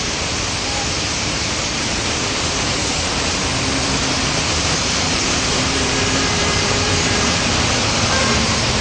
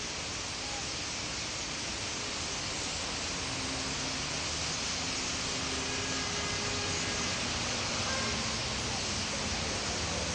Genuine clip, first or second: second